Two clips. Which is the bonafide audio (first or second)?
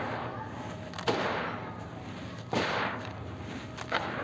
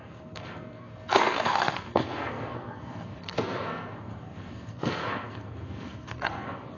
first